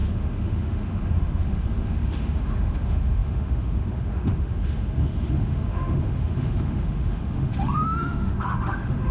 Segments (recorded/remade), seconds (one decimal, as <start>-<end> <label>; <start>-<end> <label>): 0.0-9.1 remade